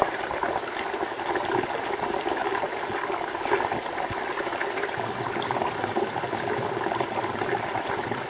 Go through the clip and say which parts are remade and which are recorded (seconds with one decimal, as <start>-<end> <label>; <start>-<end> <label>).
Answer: 0.0-8.3 recorded